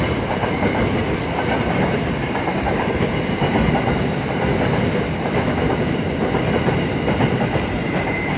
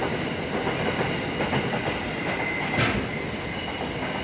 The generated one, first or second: first